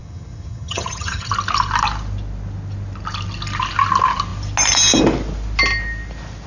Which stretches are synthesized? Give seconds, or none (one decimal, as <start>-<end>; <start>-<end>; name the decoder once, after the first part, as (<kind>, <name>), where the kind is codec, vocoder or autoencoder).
0.0-1.3 (vocoder, HiFi-GAN)